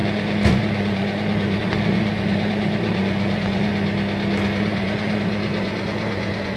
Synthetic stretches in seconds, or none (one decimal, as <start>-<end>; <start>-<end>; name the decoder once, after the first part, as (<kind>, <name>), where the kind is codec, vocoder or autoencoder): 0.0-3.7 (vocoder, Vocos); 4.6-6.6